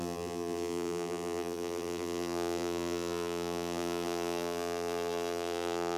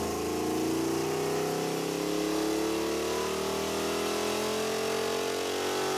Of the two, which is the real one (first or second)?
second